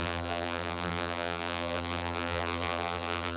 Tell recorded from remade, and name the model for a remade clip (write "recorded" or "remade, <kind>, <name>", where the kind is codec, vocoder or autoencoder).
remade, vocoder, BigVGAN v2